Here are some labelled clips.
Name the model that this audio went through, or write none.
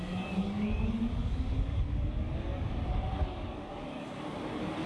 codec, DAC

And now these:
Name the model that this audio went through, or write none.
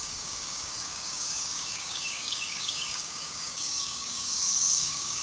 codec, DAC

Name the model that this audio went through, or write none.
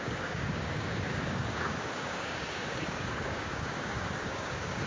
codec, DAC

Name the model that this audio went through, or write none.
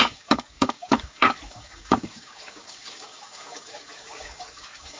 codec, DAC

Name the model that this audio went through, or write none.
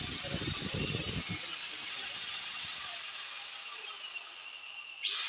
none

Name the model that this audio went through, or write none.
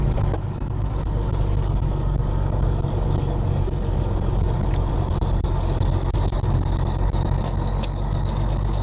codec, DAC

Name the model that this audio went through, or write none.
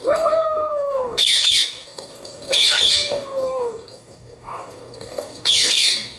codec, DAC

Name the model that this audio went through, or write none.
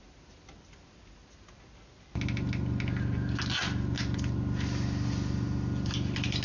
none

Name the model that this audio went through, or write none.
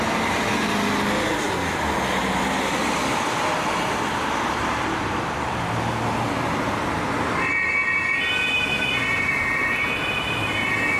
none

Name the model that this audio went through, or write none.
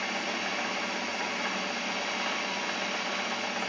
none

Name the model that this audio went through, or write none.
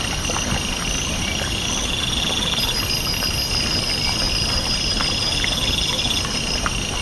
none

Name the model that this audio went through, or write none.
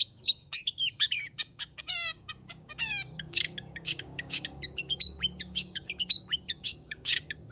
codec, DAC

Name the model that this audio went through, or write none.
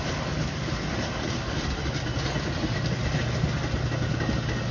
none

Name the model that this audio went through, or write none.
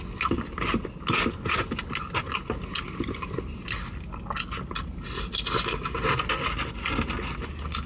none